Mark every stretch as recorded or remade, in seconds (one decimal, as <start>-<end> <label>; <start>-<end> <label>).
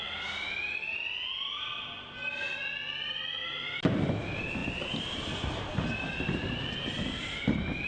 0.0-7.9 recorded